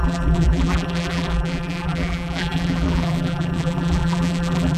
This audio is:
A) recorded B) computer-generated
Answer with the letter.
B